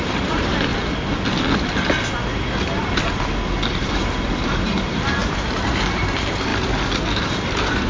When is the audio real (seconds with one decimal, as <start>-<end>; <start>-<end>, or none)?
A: 0.7-3.7; 6.5-7.1